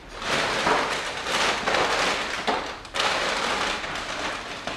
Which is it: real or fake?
real